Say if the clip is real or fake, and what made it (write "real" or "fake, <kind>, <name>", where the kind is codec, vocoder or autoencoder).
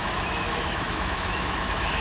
fake, autoencoder, DAC-VAE